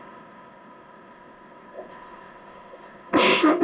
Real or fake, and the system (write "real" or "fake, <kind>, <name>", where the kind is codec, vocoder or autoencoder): fake, codec, ZipCodec